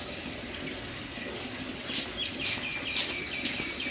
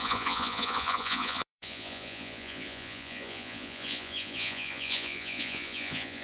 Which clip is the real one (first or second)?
first